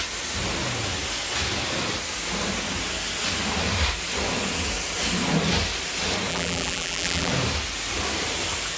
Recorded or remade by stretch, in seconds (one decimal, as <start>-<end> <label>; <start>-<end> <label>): 0.0-6.3 recorded; 6.3-7.3 remade; 7.3-8.8 recorded